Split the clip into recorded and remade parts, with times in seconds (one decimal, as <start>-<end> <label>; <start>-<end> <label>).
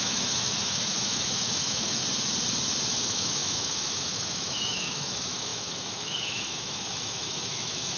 0.0-2.0 remade; 2.0-3.0 recorded; 3.0-8.0 remade